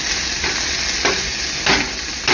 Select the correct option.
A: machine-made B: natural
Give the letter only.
B